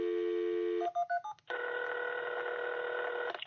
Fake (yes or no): no